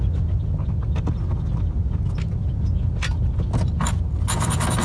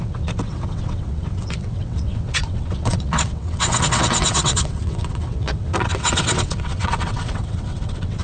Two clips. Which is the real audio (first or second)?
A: first